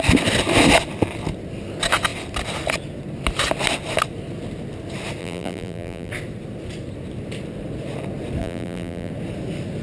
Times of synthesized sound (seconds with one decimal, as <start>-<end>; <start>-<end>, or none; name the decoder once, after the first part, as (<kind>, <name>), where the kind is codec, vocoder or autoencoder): 5.2-6.1 (vocoder, BigVGAN v2); 8.4-9.1